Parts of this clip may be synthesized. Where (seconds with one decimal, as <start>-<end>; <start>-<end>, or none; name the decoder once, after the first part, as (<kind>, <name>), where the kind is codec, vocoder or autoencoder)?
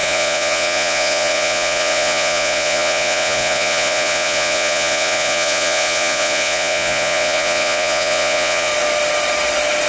0.0-8.7 (vocoder, Vocos)